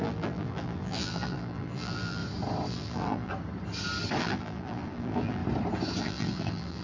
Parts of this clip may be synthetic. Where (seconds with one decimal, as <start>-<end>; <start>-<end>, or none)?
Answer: 0.0-2.2; 2.7-3.3; 4.2-5.4; 6.0-6.8